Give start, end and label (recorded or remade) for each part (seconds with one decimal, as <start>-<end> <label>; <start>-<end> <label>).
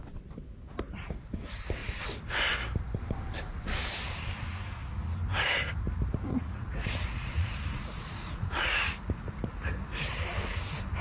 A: 0.0-6.3 recorded; 6.3-9.3 remade; 9.3-11.0 recorded